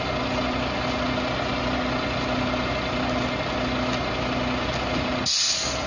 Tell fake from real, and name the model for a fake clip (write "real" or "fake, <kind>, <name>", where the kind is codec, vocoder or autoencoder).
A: real